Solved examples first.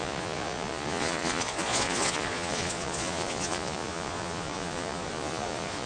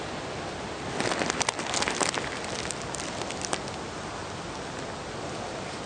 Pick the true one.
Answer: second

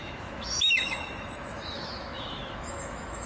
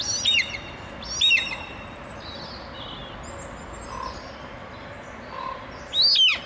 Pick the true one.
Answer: second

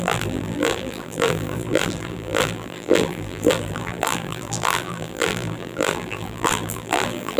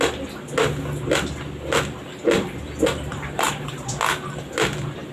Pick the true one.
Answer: second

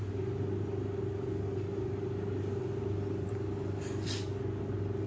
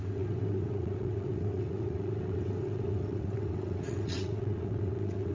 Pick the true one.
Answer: first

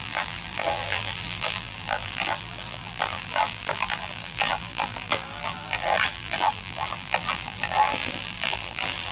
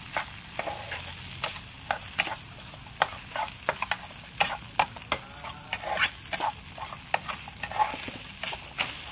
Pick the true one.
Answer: second